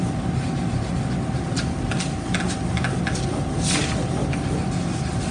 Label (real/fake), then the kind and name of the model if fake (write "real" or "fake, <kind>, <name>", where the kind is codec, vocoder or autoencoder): real